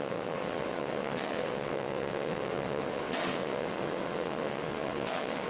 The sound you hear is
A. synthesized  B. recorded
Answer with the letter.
A